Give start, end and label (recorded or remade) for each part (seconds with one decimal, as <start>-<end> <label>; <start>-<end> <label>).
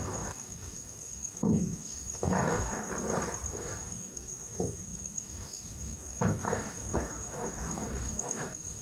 0.0-2.9 remade; 2.9-3.5 recorded; 3.5-8.8 remade